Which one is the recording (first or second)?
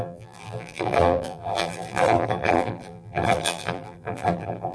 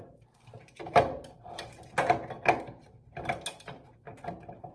second